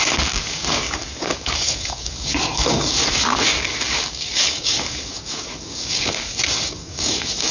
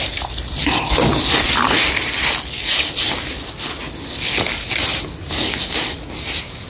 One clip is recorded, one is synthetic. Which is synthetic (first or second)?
first